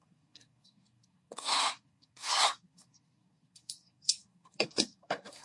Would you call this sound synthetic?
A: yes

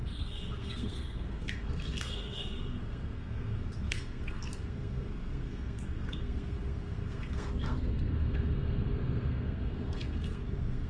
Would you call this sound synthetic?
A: yes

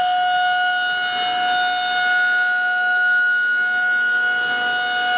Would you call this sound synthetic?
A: no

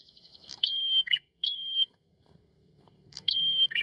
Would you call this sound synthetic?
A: yes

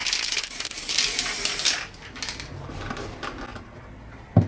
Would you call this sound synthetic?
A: no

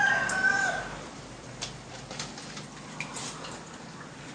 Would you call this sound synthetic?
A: no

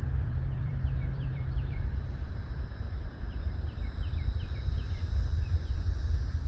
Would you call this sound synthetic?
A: yes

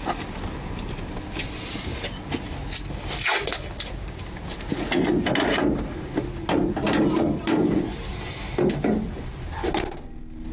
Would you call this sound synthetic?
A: no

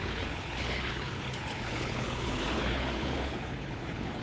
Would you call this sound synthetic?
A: yes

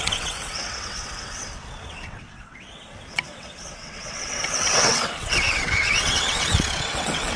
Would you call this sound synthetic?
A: yes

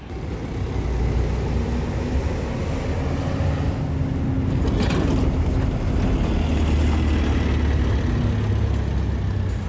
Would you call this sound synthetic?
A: no